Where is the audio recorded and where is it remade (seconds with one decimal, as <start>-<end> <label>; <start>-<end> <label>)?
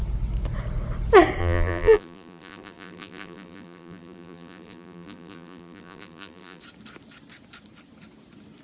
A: 0.0-1.4 recorded; 1.4-6.6 remade; 6.6-8.6 recorded